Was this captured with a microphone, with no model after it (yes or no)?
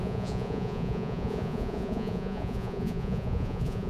no